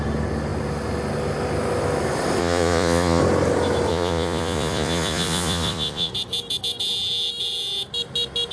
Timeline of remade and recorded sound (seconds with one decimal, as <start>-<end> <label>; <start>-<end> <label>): 0.0-2.4 recorded; 2.4-3.2 remade; 3.2-3.9 recorded; 3.9-6.1 remade; 6.1-8.5 recorded